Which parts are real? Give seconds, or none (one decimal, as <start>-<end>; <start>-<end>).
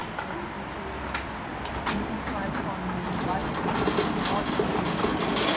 0.0-5.6